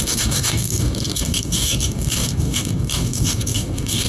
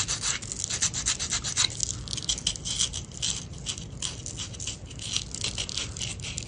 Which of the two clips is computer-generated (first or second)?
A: first